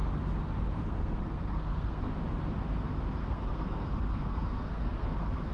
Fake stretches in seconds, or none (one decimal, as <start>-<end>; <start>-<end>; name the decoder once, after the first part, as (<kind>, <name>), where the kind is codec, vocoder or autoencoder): 0.8-2.1 (codec, SNAC); 3.2-5.5